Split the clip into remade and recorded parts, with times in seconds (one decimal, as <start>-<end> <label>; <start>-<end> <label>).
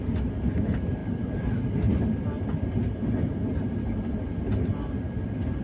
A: 0.0-5.6 recorded